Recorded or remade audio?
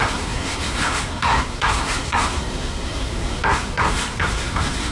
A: remade